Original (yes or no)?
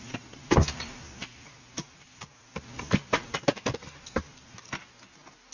yes